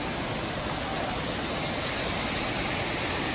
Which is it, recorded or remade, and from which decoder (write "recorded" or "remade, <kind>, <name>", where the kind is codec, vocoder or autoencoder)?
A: recorded